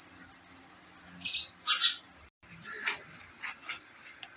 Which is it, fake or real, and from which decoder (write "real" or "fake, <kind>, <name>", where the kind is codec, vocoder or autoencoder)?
real